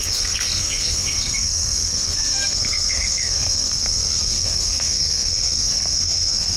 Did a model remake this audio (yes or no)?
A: yes